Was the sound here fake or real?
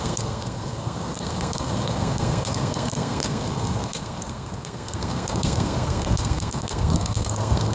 fake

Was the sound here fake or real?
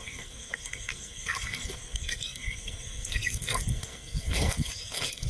fake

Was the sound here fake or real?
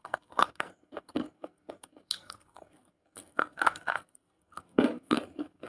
fake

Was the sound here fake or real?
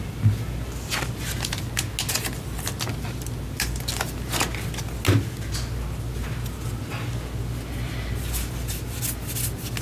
real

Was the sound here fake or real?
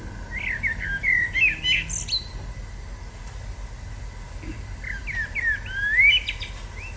real